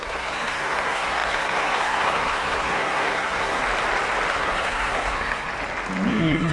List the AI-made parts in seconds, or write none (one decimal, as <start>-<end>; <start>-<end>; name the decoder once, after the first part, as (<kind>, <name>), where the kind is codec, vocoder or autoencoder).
0.0-3.6 (codec, SNAC); 4.3-5.5; 6.1-6.5